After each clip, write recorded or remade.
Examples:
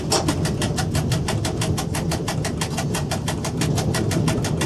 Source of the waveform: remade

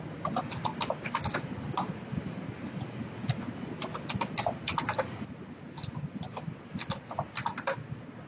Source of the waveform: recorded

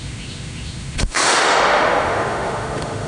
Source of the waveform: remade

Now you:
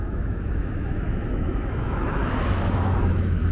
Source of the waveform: remade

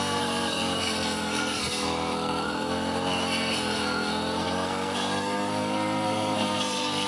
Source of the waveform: remade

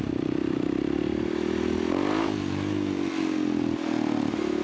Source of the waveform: recorded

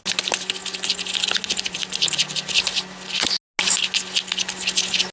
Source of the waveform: recorded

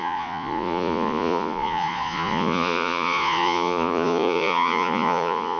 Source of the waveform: remade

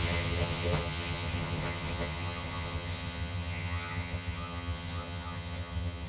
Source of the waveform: remade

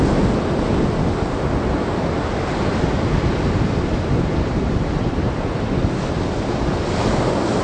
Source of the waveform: recorded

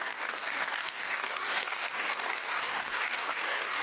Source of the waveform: remade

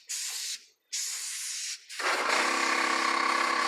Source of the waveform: recorded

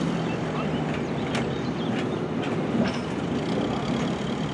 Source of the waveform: recorded